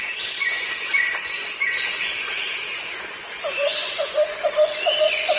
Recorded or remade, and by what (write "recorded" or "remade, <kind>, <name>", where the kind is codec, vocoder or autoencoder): remade, vocoder, Vocos